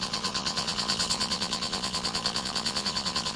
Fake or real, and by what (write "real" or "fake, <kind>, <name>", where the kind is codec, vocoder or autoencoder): fake, vocoder, Vocos